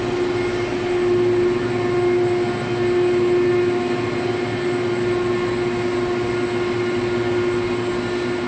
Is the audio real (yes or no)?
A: yes